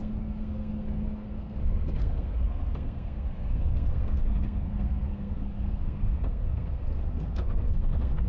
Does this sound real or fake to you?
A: fake